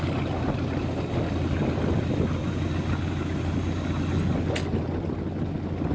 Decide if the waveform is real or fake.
real